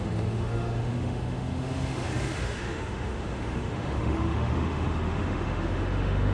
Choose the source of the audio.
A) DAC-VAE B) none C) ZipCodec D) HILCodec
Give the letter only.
A